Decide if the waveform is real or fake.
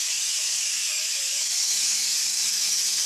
fake